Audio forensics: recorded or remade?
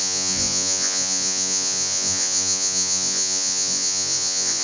remade